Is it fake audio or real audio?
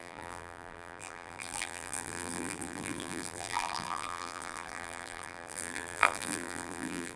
fake